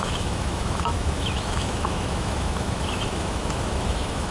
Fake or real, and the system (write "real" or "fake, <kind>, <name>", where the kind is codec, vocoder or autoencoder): fake, autoencoder, DAC-VAE